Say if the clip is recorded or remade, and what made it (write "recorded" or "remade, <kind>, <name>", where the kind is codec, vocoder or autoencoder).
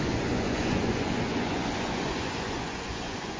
remade, vocoder, Vocos